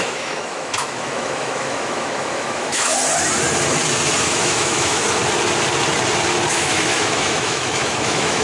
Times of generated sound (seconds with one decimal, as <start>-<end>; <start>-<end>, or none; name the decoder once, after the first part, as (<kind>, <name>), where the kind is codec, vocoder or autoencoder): 0.0-2.9 (autoencoder, DAC-VAE); 4.2-5.2; 6.5-8.4